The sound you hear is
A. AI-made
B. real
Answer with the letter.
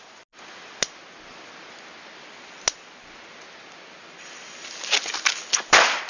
B